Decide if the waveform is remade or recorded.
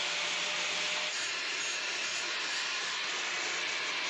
recorded